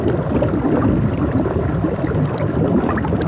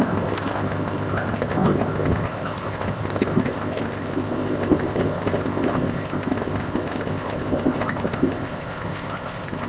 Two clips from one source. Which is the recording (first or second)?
first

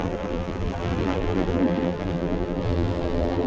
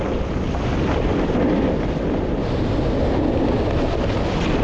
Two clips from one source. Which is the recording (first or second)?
second